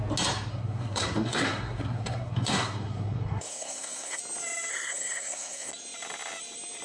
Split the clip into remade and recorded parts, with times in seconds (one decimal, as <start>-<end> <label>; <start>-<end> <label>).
0.0-0.5 recorded; 0.5-4.2 remade; 4.2-4.7 recorded; 4.7-5.7 remade; 5.7-6.8 recorded